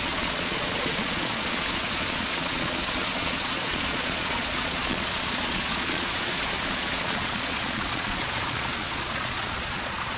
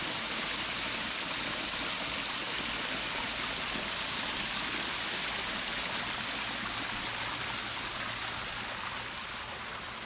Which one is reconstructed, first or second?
first